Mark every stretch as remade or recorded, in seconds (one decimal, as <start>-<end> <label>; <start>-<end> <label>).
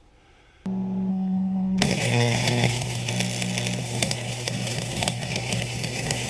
0.0-1.1 recorded; 1.1-3.1 remade; 3.1-3.8 recorded; 3.8-6.3 remade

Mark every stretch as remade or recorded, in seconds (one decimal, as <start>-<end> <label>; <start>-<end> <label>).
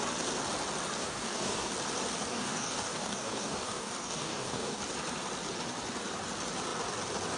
0.0-1.0 recorded; 1.0-1.7 remade; 1.7-2.3 recorded; 2.3-4.8 remade; 4.8-7.4 recorded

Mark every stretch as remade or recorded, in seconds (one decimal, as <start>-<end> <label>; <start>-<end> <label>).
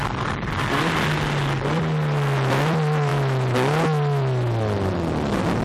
0.0-5.6 recorded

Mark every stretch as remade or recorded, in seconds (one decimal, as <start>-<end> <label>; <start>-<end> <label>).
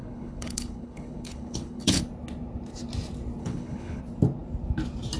0.0-2.0 remade; 2.0-3.4 recorded; 3.4-4.0 remade; 4.0-5.2 recorded